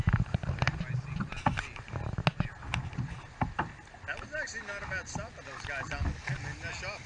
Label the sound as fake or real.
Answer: real